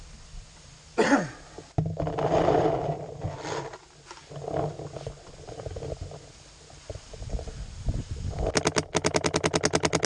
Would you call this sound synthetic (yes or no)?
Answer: no